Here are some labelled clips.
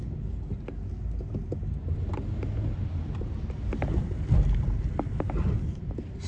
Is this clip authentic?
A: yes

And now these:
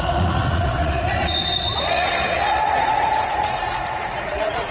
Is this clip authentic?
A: no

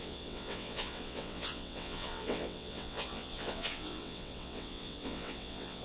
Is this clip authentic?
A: no